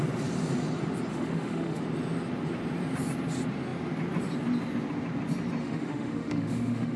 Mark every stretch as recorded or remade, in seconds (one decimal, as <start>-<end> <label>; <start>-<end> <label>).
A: 0.0-1.1 recorded; 1.1-1.8 remade; 1.8-5.6 recorded; 5.6-7.0 remade